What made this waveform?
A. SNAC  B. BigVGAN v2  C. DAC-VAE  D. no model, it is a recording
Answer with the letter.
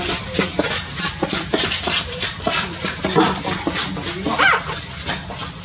D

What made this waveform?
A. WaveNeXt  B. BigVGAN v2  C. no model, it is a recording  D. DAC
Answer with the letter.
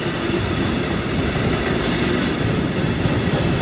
B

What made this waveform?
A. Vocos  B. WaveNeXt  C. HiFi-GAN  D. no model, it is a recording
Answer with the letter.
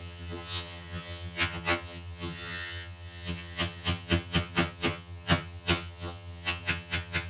C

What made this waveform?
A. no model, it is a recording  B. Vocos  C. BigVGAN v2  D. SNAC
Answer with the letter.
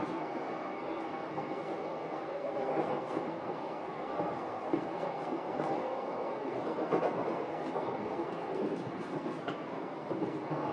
D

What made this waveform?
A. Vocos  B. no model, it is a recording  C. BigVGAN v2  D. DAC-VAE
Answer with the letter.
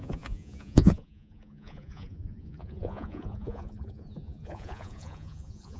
A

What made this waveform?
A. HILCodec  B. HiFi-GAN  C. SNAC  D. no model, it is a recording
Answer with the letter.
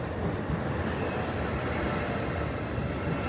D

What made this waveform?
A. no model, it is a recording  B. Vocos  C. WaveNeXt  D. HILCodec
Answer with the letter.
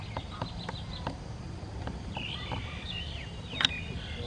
A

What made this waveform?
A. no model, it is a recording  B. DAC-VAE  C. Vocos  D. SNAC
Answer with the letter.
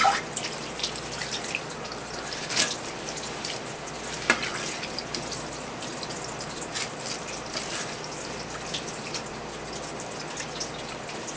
A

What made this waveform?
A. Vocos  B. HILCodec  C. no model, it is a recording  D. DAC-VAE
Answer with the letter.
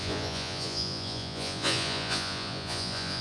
A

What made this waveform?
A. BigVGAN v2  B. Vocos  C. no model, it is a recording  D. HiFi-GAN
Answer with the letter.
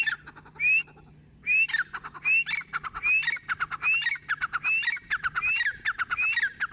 C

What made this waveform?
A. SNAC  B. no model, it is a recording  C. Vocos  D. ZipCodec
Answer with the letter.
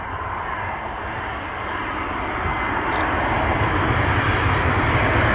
B